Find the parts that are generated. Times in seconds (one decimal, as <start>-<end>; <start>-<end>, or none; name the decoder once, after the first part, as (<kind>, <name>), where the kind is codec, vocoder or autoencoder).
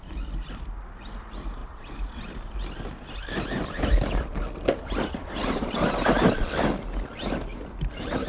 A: 1.6-2.3 (vocoder, BigVGAN v2); 5.4-5.9; 7.5-8.3